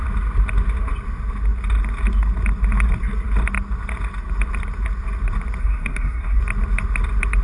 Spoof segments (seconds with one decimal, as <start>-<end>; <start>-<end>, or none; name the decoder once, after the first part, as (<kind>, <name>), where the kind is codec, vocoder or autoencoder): 5.6-6.4 (codec, SNAC)